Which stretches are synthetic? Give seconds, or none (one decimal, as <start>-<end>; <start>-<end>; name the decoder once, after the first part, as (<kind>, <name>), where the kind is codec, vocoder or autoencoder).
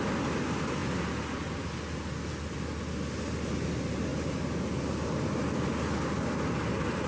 none